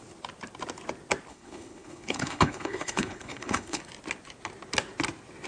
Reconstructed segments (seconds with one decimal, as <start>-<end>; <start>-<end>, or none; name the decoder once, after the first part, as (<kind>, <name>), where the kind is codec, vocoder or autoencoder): 1.3-3.8 (codec, HILCodec)